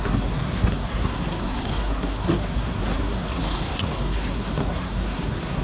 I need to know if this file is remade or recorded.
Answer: remade